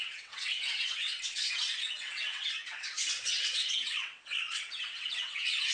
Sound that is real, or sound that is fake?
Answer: fake